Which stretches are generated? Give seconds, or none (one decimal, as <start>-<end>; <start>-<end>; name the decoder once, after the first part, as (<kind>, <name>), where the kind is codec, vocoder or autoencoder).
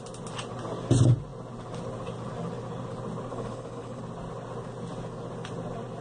3.3-4.0 (codec, HILCodec)